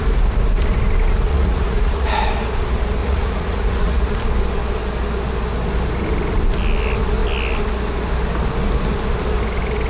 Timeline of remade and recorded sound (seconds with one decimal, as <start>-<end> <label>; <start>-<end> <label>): 0.0-1.3 recorded; 1.3-2.2 remade; 2.2-3.0 recorded; 3.0-4.1 remade; 4.1-9.9 recorded